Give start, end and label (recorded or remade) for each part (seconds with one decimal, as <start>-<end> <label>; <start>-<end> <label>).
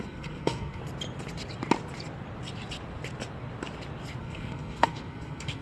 0.0-0.8 remade; 0.8-4.2 recorded; 4.2-5.6 remade